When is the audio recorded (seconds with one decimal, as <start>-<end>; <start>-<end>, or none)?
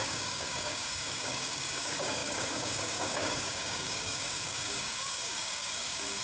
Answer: none